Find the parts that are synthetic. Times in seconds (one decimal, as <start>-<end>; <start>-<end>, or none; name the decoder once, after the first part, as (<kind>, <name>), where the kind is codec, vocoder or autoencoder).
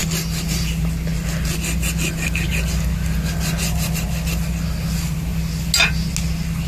none